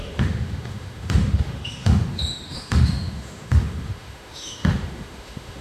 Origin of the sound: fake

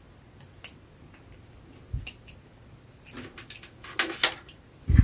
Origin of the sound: real